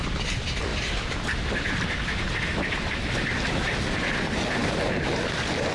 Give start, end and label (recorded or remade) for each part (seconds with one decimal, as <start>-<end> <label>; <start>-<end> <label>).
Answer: 0.0-5.7 recorded